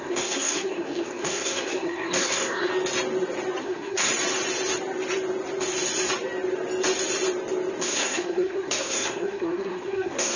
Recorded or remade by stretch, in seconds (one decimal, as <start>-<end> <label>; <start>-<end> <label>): 0.0-2.7 remade; 2.7-3.6 recorded; 3.6-4.1 remade; 4.1-7.8 recorded; 7.8-10.4 remade